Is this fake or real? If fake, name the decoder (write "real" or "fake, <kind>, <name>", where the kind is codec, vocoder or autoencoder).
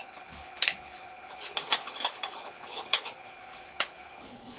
fake, codec, HILCodec